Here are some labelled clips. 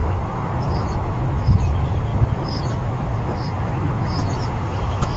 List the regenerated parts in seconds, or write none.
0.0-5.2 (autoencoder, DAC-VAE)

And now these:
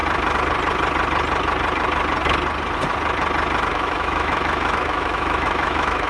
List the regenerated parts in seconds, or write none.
3.7-6.1 (autoencoder, DAC-VAE)

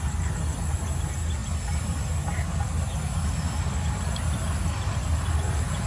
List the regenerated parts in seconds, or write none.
none

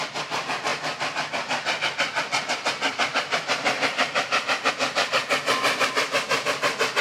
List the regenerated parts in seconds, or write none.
none